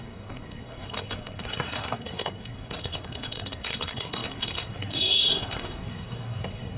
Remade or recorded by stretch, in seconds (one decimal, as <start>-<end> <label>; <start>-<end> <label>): 0.0-6.8 remade